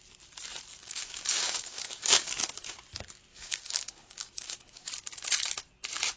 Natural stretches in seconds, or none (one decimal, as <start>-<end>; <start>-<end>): 0.0-0.7; 2.3-3.3; 4.9-6.2